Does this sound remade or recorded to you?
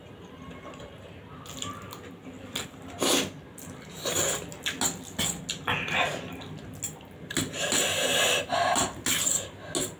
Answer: recorded